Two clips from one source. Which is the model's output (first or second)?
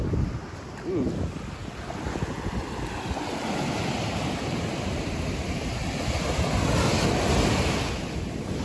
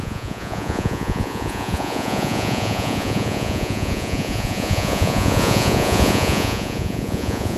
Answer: second